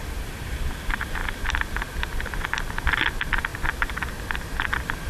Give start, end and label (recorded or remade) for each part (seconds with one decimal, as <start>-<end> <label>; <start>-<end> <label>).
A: 0.0-5.1 recorded